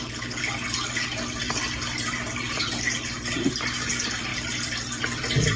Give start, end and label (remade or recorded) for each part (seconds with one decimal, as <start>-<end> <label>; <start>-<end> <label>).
0.0-5.6 recorded